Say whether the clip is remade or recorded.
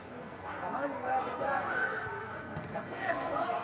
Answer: remade